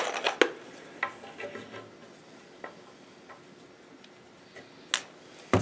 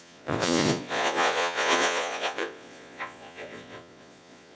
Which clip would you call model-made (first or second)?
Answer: second